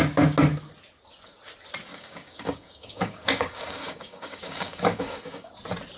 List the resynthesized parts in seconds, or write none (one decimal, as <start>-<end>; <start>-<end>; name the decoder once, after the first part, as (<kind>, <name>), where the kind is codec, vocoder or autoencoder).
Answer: 1.9-5.5 (codec, DAC)